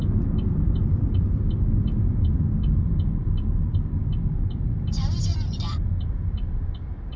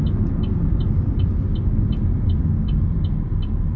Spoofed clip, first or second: first